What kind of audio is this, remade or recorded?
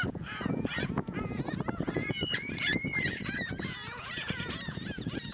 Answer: remade